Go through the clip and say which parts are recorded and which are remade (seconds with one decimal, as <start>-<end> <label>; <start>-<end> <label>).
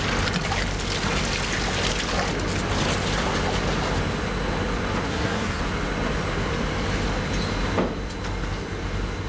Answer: 0.0-5.1 recorded; 5.1-5.6 remade; 5.6-9.3 recorded